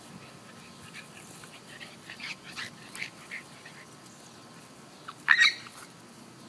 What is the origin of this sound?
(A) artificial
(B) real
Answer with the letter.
B